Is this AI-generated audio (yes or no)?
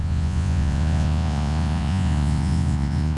yes